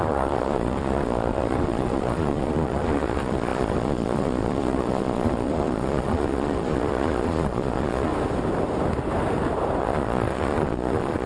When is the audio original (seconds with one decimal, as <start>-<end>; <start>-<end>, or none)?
8.1-9.8